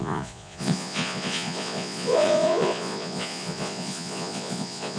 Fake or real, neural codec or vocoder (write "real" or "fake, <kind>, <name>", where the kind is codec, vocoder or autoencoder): fake, vocoder, Vocos